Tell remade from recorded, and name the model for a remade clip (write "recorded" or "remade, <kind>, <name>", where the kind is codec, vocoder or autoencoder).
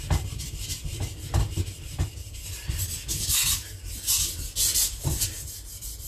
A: recorded